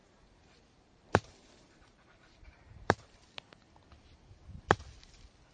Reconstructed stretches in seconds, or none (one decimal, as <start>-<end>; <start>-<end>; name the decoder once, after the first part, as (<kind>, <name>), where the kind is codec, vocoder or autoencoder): 0.0-3.3 (vocoder, BigVGAN v2)